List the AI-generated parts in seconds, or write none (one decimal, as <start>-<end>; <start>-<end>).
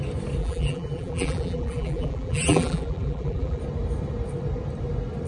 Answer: 0.4-3.6